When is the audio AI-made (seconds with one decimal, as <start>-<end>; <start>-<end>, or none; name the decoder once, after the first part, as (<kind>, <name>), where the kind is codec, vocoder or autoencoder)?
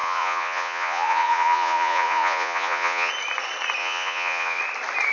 0.0-3.1 (vocoder, Vocos); 3.8-4.6